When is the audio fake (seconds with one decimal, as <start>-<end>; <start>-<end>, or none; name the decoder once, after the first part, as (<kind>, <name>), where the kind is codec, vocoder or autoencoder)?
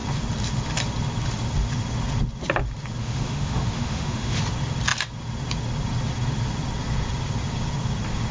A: 3.0-4.4 (autoencoder, DAC-VAE)